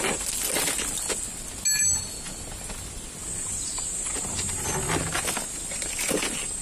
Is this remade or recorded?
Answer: recorded